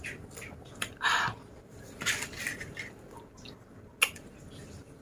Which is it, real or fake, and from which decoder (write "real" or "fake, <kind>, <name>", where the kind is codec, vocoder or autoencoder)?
real